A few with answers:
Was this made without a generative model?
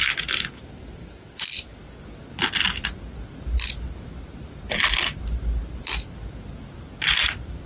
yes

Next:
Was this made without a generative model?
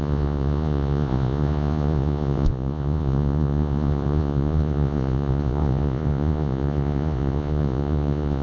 no